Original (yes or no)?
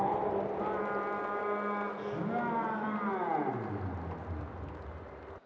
yes